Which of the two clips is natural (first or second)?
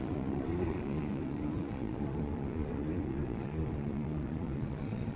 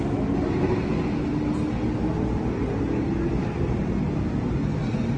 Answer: second